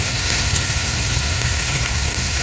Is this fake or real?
fake